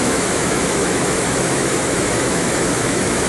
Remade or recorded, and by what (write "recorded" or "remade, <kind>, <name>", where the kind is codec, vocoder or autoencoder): remade, autoencoder, DAC-VAE